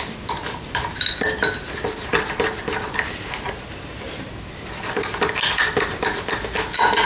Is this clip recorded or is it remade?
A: recorded